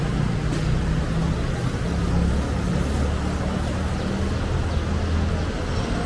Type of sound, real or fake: real